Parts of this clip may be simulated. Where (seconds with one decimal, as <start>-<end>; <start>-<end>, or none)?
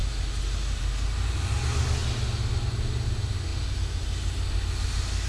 none